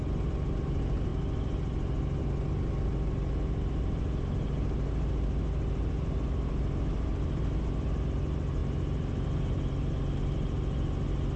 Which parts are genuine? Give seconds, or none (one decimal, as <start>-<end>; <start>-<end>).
0.0-11.4